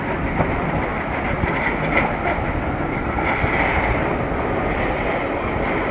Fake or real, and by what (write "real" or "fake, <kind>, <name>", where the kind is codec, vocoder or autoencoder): real